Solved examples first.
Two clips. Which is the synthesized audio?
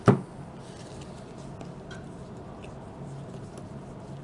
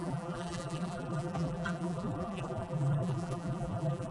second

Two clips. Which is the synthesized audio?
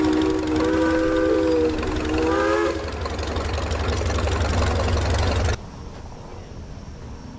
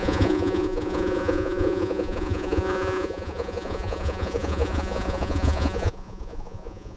second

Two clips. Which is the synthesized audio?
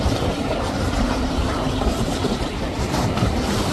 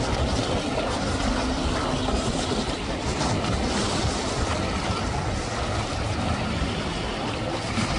first